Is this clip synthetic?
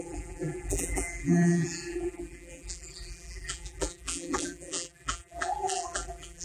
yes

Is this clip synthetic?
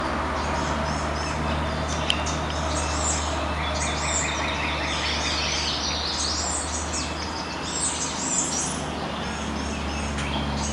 no